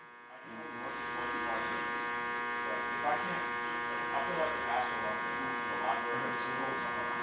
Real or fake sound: real